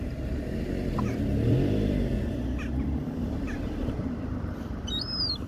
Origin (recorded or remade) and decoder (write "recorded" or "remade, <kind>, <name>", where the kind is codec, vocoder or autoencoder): remade, vocoder, BigVGAN v2